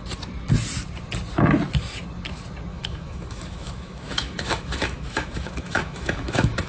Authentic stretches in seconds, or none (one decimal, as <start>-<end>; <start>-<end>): 0.0-2.7